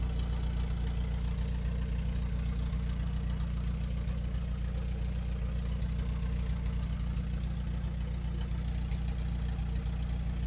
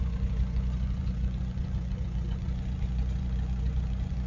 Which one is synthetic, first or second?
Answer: second